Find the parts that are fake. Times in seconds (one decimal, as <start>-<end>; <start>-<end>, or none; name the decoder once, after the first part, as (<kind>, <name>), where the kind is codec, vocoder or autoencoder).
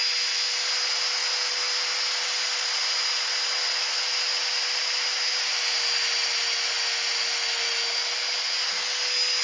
none